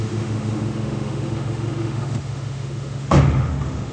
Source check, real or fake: fake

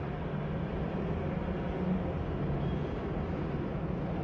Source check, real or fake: real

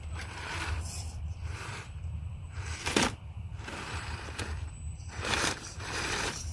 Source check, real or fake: fake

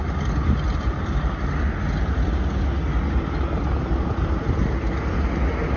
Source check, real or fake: real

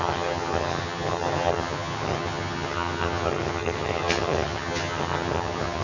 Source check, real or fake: fake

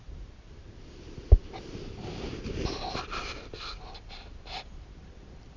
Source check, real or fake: real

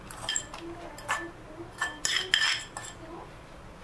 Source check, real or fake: real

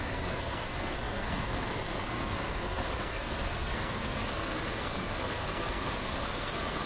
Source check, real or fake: fake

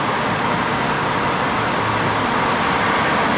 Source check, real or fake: real